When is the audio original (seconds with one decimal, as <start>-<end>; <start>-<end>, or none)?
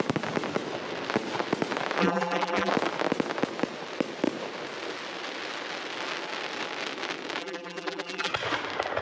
0.0-2.0; 2.7-7.4; 8.3-9.0